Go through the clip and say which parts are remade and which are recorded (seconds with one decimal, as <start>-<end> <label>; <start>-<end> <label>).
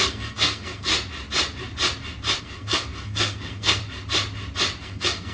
0.0-0.9 remade; 0.9-2.4 recorded; 2.4-3.8 remade; 3.8-4.8 recorded; 4.8-5.3 remade